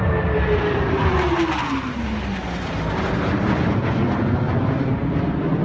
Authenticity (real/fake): real